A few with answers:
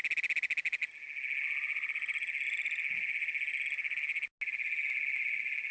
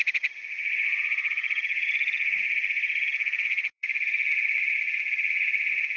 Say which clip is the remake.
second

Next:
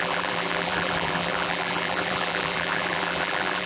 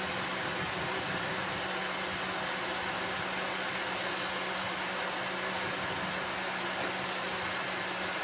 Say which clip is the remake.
first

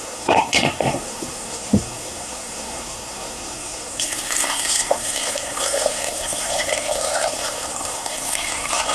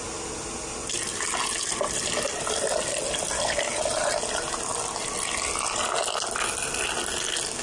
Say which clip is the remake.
first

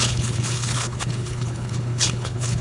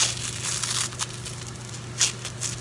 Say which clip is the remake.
first